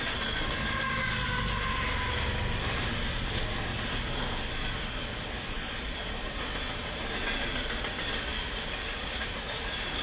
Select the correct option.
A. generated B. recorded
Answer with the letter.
B